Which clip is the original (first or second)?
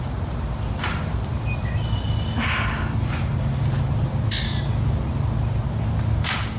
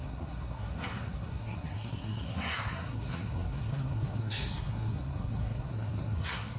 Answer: first